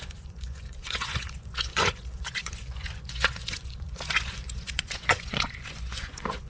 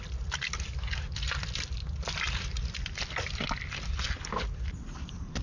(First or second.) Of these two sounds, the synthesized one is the first